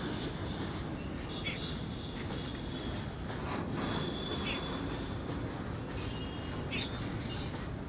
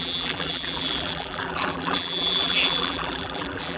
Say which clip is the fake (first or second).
second